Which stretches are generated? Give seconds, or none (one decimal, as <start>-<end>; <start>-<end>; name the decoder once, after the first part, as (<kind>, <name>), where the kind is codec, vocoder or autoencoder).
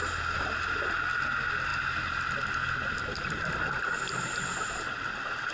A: none